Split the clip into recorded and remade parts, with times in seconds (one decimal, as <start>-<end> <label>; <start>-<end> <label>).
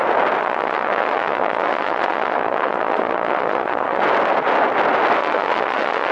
0.0-0.4 recorded; 0.4-4.0 remade; 4.0-5.2 recorded; 5.2-6.1 remade